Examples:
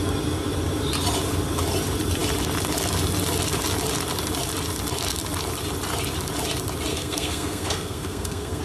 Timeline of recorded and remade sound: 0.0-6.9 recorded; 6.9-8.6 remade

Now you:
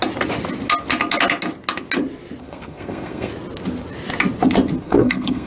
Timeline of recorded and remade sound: 0.0-2.4 recorded; 2.4-3.3 remade; 3.3-4.8 recorded; 4.8-5.5 remade

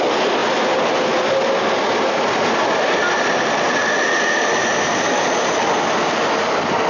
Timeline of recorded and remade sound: 0.0-6.9 recorded

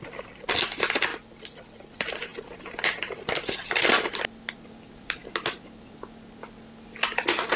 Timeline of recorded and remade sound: 0.0-7.6 recorded

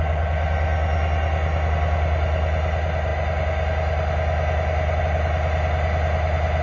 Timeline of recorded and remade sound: 0.0-6.6 recorded

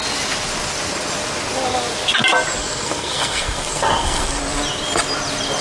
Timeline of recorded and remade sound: 0.0-2.6 recorded; 2.6-4.4 remade; 4.4-5.6 recorded

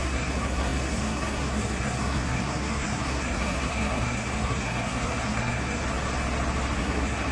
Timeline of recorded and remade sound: 0.0-5.8 remade; 5.8-6.8 recorded; 6.8-7.3 remade